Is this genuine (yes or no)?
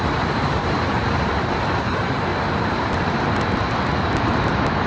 yes